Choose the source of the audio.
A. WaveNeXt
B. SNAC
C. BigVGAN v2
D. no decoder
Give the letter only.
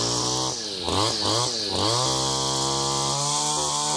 D